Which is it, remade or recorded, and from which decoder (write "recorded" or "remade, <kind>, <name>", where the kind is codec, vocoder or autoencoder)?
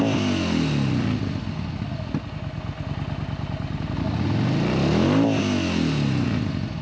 recorded